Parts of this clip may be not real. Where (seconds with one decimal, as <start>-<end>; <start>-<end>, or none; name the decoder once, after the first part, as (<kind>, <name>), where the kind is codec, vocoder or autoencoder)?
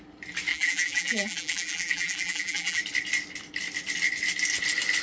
0.5-2.8 (vocoder, BigVGAN v2)